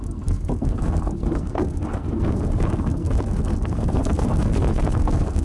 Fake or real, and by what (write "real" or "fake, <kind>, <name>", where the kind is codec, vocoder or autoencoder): fake, codec, SNAC